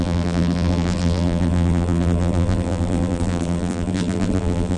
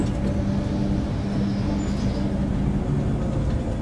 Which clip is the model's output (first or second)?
first